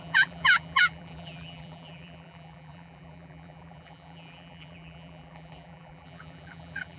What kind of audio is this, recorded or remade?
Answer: remade